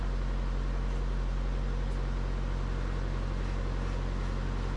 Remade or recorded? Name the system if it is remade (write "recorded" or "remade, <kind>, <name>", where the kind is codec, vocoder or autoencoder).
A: recorded